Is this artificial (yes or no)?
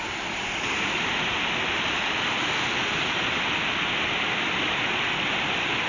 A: no